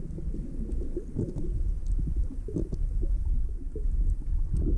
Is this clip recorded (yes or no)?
yes